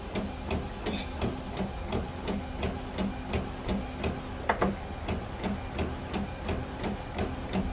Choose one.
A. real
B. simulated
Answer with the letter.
A